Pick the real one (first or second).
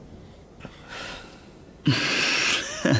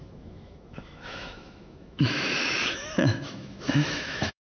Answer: first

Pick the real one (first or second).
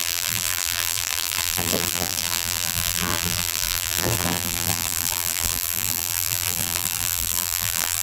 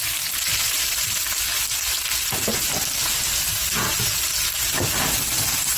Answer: second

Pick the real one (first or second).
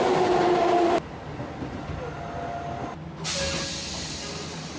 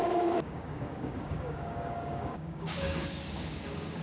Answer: first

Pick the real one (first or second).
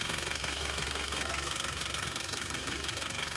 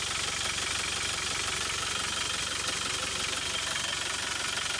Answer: second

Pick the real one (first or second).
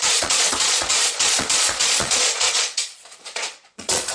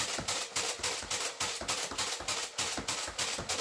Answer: second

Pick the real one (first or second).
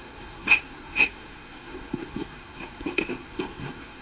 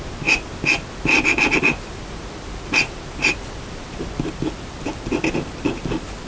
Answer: second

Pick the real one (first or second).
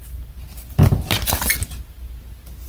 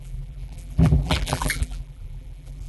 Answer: first